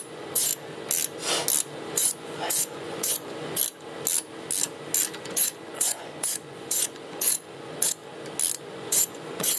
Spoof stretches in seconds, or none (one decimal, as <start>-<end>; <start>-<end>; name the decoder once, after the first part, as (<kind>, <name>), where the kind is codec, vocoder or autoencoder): 0.0-0.5 (vocoder, Vocos); 1.9-3.6; 5.2-8.0; 8.6-9.6

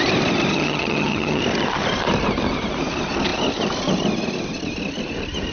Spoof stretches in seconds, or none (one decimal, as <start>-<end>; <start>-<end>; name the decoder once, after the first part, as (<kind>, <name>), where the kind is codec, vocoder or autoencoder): 0.5-1.4 (vocoder, HiFi-GAN)

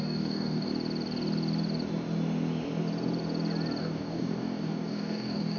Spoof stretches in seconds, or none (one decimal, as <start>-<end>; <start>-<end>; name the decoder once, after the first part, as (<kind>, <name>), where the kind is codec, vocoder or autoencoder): 0.0-0.7 (codec, DAC); 3.8-5.6